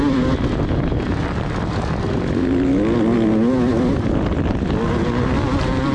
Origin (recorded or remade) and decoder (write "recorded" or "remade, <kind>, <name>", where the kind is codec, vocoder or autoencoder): recorded